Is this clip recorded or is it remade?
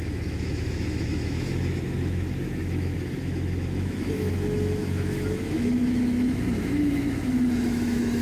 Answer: remade